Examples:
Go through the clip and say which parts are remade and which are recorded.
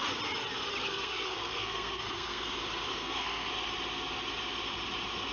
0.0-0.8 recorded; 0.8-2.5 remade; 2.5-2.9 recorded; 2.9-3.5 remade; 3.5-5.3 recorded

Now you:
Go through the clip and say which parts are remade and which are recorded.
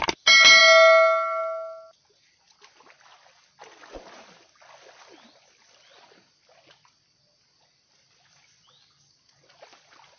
0.0-10.2 recorded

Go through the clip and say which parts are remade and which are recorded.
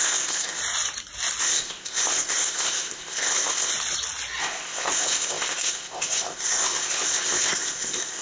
0.0-0.6 remade; 0.6-1.4 recorded; 1.4-3.7 remade; 3.7-4.4 recorded; 4.4-8.2 remade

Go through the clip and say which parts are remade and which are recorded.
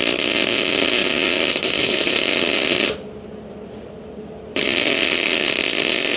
0.0-6.2 remade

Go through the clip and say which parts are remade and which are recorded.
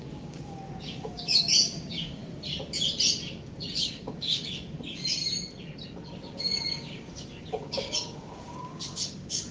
0.0-2.2 remade; 2.2-3.9 recorded; 3.9-5.2 remade; 5.2-6.4 recorded; 6.4-9.5 remade